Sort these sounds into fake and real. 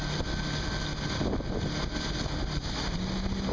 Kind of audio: real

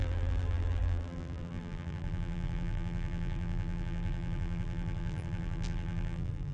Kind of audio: fake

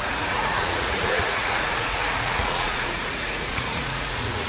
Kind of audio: fake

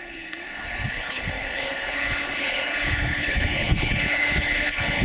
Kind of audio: fake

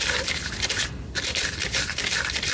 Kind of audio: real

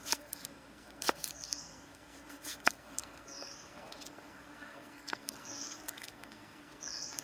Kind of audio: fake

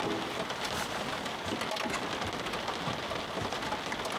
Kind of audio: real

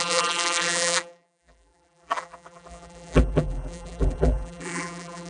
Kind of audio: fake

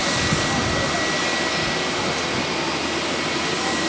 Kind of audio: real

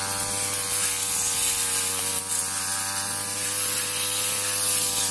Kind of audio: real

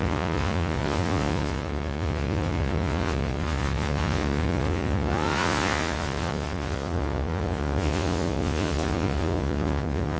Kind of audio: fake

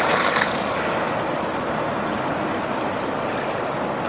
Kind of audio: real